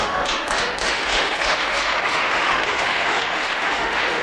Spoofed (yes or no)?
yes